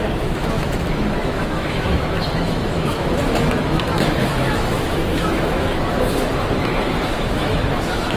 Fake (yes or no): yes